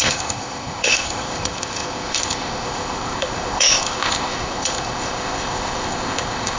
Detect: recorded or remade remade